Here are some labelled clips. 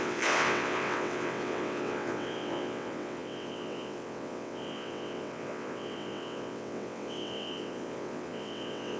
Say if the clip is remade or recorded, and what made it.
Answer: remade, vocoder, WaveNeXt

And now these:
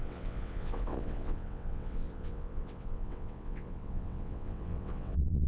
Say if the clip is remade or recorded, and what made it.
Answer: remade, vocoder, WaveNeXt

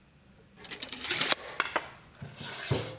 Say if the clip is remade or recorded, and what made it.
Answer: recorded